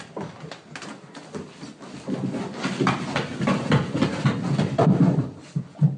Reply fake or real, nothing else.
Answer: real